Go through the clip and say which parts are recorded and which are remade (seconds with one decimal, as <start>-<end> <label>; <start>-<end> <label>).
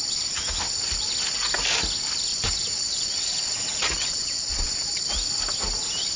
0.0-2.3 recorded; 2.3-5.0 remade; 5.0-6.2 recorded